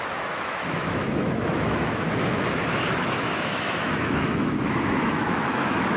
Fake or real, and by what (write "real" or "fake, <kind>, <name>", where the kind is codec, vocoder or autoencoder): fake, autoencoder, DAC-VAE